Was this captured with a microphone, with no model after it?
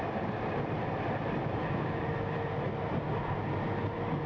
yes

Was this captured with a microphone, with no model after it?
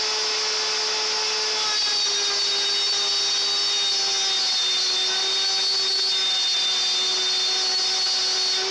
yes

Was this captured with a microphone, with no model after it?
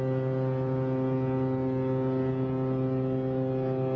yes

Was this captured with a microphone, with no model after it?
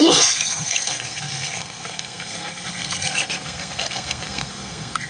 no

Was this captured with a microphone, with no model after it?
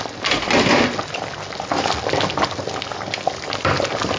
yes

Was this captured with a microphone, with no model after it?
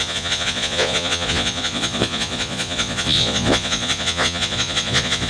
no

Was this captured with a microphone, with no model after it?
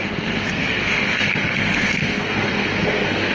no